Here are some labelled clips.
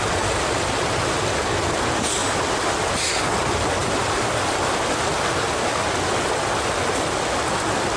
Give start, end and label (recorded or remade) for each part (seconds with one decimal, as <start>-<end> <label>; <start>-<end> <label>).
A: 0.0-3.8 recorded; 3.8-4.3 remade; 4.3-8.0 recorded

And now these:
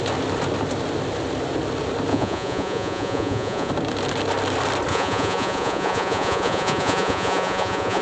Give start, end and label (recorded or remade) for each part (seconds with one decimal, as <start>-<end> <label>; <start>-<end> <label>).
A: 0.0-2.1 recorded; 2.1-3.7 remade; 3.7-4.9 recorded; 4.9-8.0 remade

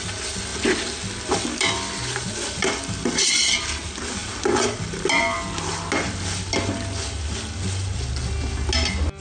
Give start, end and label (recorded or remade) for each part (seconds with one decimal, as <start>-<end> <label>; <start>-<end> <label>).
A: 0.0-9.2 recorded

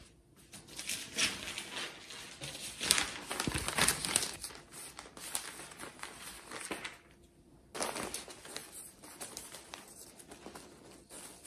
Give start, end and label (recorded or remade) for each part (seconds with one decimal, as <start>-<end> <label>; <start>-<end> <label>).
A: 0.0-8.6 recorded; 8.6-10.1 remade; 10.1-11.5 recorded

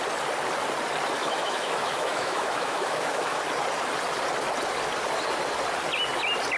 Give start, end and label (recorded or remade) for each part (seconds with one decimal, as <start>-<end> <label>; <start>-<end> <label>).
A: 0.0-1.2 recorded; 1.2-3.4 remade; 3.4-6.6 recorded